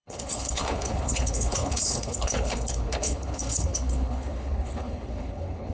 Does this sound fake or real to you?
fake